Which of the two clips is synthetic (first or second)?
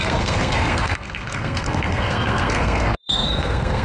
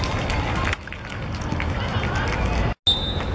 first